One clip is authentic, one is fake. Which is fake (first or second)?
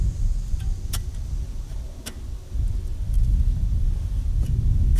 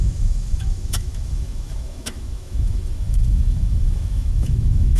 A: second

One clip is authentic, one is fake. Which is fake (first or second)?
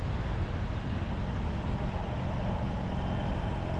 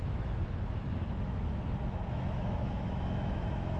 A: second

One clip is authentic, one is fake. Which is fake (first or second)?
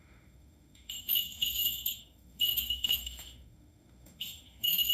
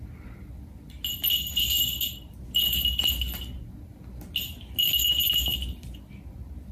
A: first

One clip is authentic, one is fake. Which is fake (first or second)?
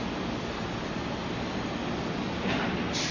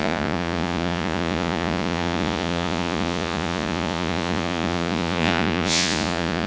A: second